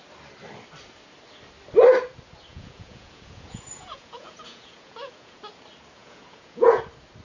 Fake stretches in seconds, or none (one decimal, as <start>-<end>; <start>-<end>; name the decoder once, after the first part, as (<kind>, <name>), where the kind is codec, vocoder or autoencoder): 2.5-5.4 (vocoder, Vocos); 6.0-6.8